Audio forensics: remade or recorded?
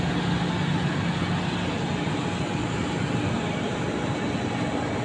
recorded